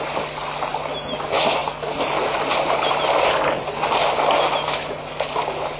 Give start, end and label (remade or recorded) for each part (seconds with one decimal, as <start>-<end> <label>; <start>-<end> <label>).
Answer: 0.0-5.8 recorded